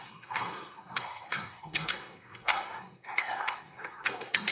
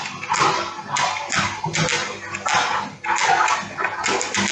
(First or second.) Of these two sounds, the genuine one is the second